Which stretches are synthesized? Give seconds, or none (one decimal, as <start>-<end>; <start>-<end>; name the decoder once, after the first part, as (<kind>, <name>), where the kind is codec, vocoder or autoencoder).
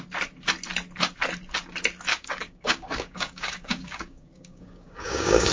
2.1-5.5 (codec, DAC)